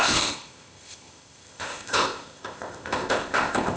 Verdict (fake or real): fake